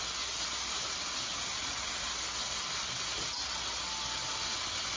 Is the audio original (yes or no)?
yes